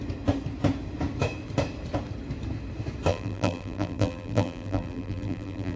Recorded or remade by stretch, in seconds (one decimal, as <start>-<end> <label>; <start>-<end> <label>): 0.0-3.1 recorded; 3.1-5.8 remade